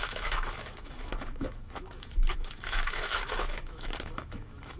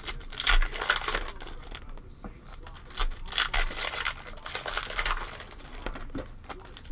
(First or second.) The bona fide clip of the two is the second